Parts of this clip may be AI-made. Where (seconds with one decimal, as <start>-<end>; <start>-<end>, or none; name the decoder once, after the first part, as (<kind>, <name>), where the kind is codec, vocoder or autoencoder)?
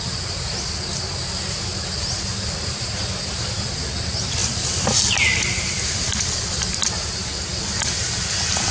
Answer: 0.9-3.9 (vocoder, BigVGAN v2)